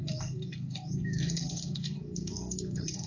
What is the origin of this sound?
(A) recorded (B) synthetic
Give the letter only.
B